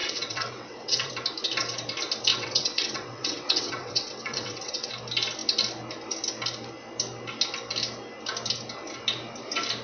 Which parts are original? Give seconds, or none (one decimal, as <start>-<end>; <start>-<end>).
1.1-2.3; 4.9-9.8